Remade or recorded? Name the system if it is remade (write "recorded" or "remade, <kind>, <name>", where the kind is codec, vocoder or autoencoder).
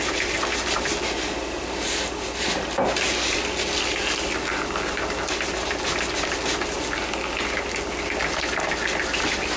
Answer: recorded